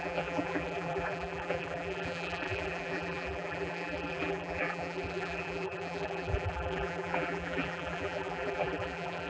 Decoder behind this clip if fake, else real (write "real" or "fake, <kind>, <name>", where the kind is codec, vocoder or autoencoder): fake, vocoder, BigVGAN v2